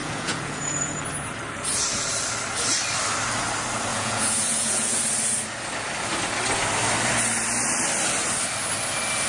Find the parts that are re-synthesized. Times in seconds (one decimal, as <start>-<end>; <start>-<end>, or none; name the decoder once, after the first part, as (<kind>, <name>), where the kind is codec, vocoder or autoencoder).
0.0-1.0 (vocoder, Vocos); 3.9-5.0